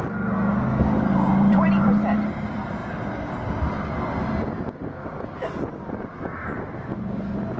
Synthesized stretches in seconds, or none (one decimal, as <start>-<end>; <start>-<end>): 1.3-1.9